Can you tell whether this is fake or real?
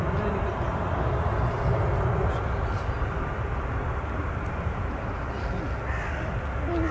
real